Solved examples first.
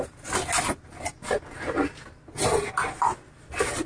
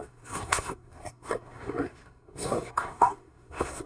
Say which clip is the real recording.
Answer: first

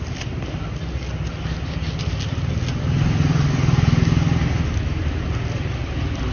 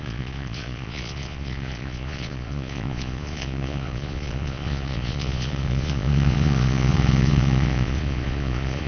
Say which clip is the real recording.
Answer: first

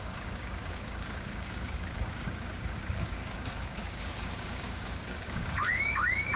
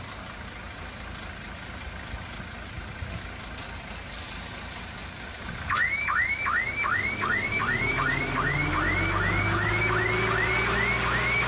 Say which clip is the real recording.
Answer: second